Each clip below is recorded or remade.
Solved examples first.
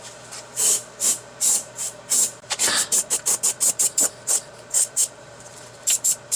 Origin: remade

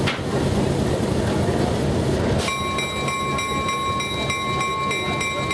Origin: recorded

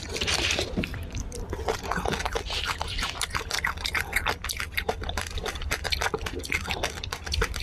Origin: remade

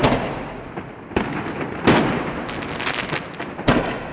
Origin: recorded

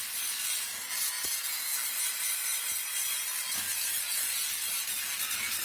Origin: recorded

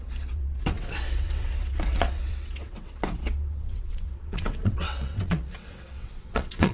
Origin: remade